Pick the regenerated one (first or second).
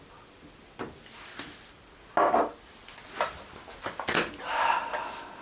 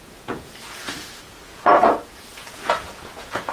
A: second